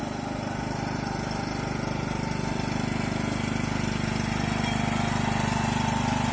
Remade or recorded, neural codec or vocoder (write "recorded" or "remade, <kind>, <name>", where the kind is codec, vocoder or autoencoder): recorded